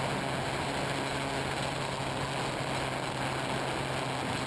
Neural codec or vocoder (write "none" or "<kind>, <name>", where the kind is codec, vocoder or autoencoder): none